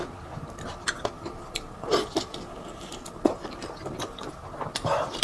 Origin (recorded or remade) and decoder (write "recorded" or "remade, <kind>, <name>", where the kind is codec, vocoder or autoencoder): recorded